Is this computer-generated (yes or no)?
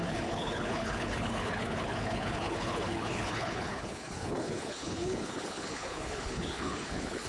yes